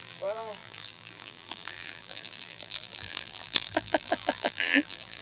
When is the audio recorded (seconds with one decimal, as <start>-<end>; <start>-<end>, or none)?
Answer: none